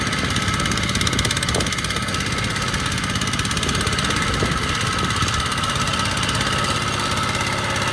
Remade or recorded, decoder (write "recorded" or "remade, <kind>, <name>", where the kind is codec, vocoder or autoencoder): recorded